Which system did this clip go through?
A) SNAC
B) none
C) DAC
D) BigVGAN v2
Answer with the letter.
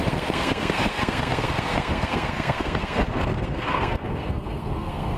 A